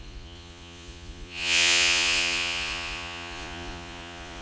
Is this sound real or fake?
fake